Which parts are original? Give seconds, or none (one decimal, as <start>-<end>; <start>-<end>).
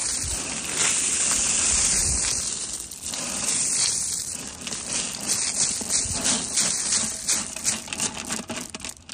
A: 0.8-2.0; 4.1-9.1